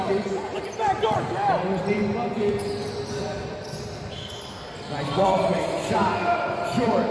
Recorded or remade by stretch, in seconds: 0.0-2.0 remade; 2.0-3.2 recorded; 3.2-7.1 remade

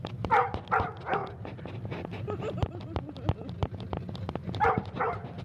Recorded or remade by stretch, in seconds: 0.0-4.4 recorded; 4.4-5.0 remade; 5.0-5.4 recorded